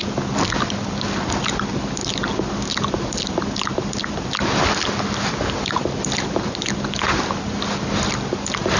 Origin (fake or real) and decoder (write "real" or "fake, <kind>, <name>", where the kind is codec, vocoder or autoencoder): real